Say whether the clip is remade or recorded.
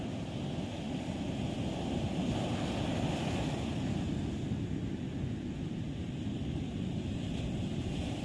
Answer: recorded